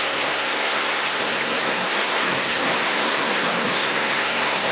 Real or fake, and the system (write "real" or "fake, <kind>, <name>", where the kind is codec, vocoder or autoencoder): fake, codec, SNAC